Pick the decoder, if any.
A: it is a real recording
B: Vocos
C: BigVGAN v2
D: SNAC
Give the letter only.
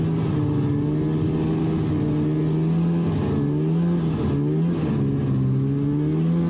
A